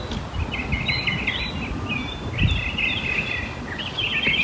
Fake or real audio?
real